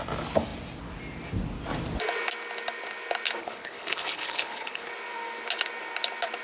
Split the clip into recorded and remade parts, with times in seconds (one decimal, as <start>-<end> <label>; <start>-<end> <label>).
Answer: 0.0-3.4 recorded; 3.4-4.9 remade; 4.9-6.4 recorded